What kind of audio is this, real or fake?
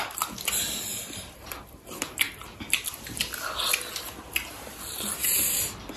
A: real